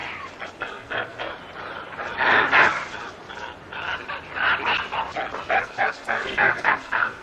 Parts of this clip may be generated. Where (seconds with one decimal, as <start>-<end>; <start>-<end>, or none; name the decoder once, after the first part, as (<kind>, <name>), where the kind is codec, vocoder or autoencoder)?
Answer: 0.6-1.3 (codec, SNAC); 5.6-7.2